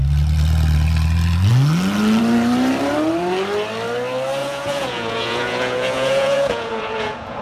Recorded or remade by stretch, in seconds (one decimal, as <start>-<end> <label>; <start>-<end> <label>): 0.0-4.4 recorded; 4.4-7.4 remade